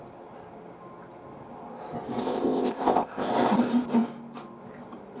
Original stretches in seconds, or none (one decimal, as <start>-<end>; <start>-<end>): 0.0-2.2; 3.3-5.2